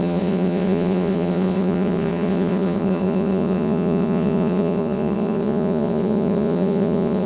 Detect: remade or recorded remade